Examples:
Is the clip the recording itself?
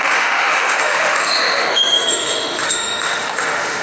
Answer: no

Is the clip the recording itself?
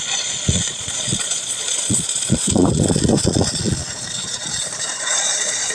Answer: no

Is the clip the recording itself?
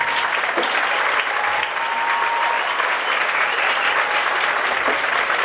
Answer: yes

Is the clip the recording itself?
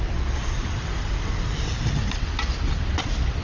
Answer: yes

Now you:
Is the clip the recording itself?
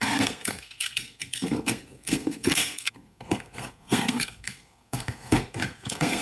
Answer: no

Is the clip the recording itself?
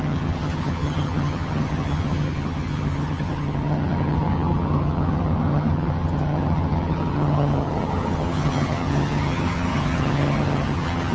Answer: no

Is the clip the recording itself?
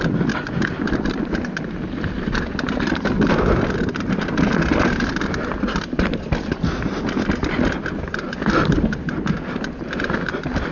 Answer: yes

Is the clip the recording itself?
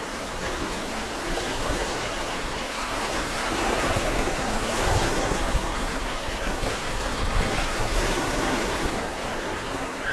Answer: no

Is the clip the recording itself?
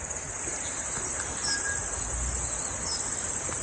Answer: yes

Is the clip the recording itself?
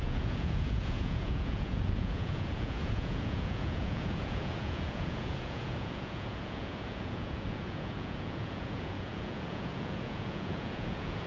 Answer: no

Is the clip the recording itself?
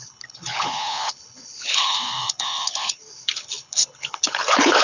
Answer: no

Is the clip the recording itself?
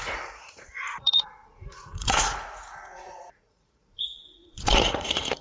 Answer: no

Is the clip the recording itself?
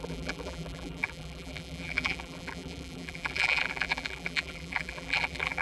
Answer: no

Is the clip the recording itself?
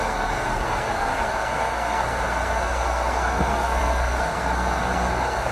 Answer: no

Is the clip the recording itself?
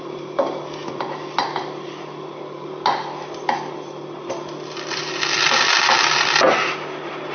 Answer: yes